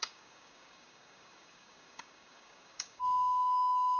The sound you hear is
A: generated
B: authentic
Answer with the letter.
A